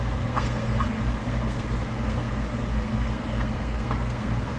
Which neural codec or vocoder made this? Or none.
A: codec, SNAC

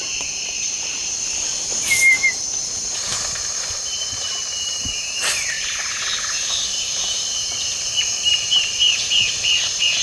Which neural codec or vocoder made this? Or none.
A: vocoder, BigVGAN v2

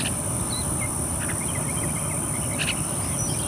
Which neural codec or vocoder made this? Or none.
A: none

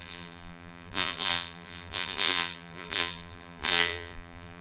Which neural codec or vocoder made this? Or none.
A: vocoder, BigVGAN v2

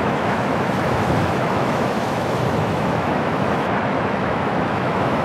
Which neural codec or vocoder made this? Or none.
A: autoencoder, DAC-VAE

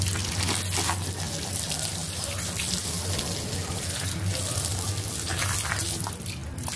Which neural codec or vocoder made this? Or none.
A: none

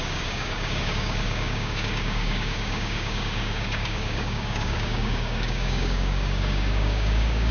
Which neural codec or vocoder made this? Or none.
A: codec, DAC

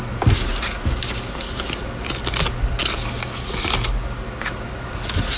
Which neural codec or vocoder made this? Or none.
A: none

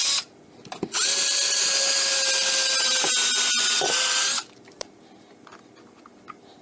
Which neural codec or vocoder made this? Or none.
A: none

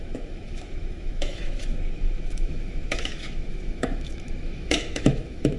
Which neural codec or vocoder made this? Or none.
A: autoencoder, DAC-VAE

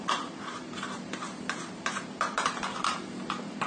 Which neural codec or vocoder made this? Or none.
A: vocoder, BigVGAN v2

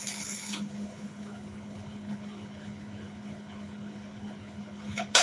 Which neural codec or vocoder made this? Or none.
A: codec, HILCodec